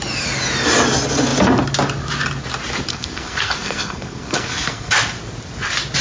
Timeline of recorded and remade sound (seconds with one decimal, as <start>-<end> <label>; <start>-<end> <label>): 0.0-2.9 recorded; 2.9-4.9 remade; 4.9-6.0 recorded